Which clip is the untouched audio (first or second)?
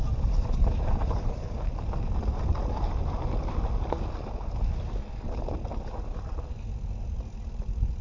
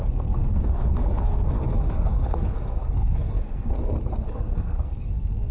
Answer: first